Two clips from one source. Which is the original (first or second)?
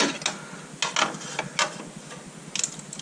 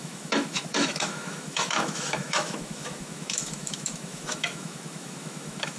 first